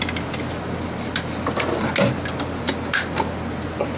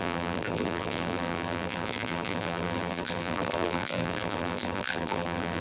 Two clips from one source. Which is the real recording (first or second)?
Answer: first